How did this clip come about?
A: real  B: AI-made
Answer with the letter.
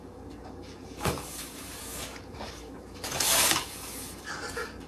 B